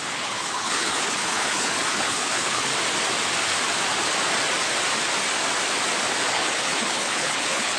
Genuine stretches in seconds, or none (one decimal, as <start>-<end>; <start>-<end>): 2.7-6.3